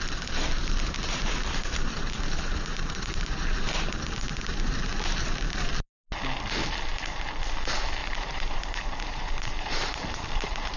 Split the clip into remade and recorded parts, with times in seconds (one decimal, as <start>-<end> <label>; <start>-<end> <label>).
0.0-0.6 recorded; 0.6-5.7 remade; 5.7-6.9 recorded; 6.9-7.4 remade; 7.4-8.0 recorded; 8.0-10.8 remade

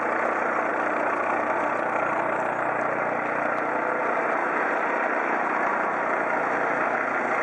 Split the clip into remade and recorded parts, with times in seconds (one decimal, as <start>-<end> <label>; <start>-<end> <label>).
0.0-4.4 recorded; 4.4-6.0 remade; 6.0-7.4 recorded